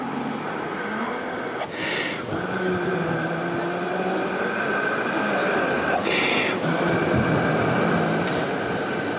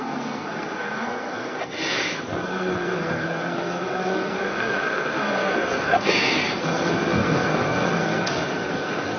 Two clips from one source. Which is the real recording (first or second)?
first